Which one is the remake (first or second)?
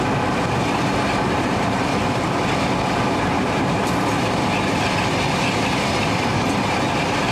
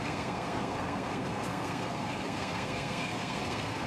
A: second